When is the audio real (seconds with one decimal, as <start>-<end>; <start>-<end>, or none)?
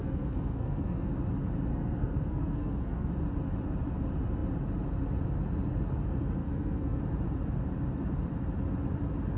1.1-1.7; 3.1-6.4; 7.0-9.4